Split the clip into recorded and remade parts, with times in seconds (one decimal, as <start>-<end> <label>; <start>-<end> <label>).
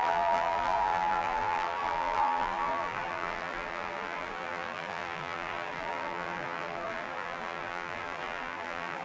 0.0-9.0 remade